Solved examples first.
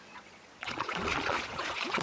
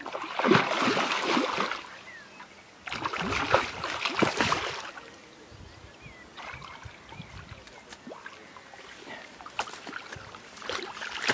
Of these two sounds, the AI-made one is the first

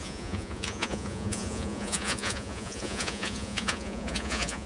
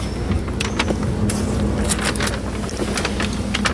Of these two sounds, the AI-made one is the first